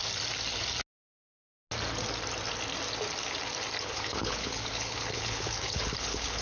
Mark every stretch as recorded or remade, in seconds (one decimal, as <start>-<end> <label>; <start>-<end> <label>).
0.0-3.8 recorded; 3.8-6.4 remade